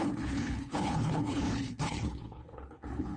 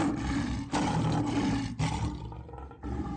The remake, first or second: first